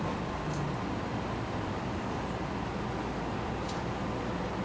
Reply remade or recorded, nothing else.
recorded